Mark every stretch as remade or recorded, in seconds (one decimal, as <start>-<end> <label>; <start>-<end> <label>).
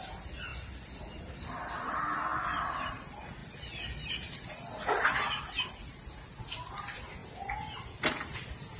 0.0-8.8 recorded